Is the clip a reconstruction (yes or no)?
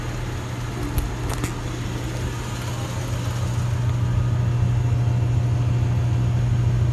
no